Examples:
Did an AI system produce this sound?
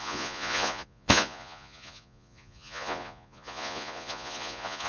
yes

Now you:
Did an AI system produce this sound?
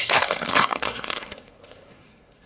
yes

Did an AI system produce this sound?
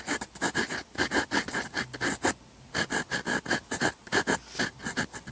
no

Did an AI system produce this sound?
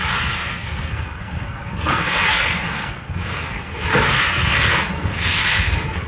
yes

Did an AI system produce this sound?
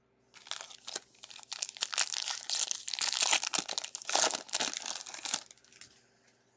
no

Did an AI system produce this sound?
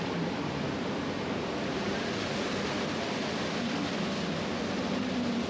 no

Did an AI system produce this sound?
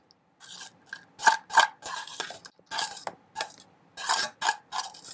no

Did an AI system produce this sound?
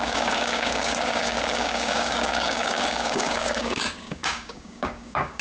yes